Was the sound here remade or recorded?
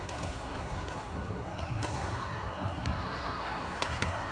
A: remade